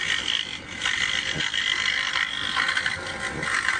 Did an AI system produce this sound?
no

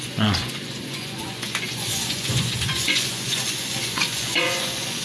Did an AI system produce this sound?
yes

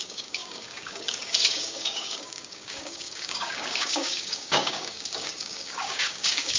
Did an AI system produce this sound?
yes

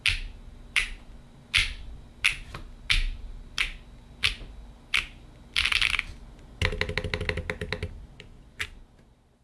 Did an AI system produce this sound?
no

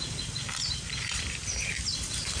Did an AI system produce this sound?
no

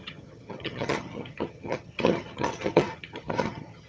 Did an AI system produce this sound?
yes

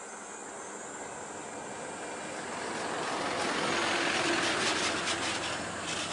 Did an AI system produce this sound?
no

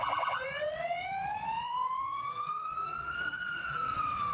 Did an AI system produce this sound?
yes